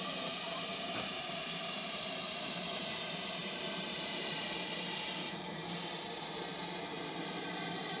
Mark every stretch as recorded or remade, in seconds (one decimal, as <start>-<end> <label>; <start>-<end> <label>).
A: 0.0-8.0 remade